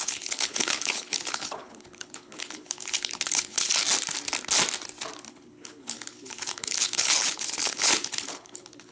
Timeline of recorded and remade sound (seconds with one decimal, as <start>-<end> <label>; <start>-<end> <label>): 0.0-3.7 remade; 3.7-5.3 recorded; 5.3-8.9 remade